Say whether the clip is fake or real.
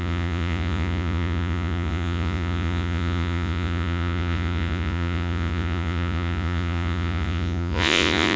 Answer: fake